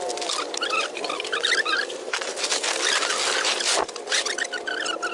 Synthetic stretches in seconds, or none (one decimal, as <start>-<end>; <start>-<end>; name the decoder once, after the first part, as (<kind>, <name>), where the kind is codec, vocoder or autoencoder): none